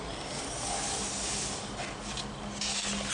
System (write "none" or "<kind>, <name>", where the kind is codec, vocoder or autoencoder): none